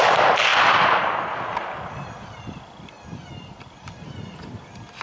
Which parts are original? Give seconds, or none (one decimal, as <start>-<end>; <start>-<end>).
0.0-5.0